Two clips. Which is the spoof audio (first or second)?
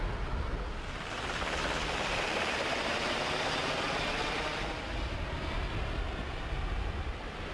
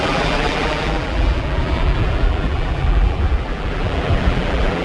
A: second